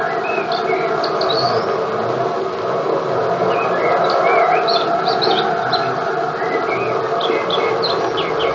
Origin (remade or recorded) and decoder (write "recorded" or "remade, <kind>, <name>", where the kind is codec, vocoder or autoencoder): recorded